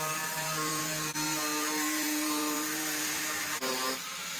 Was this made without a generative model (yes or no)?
no